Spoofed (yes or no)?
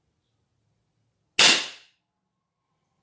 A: no